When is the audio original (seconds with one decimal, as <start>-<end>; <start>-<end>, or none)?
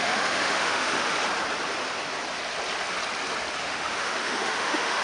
1.1-3.6